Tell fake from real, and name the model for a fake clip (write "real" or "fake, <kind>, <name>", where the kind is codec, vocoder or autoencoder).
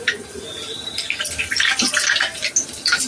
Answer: real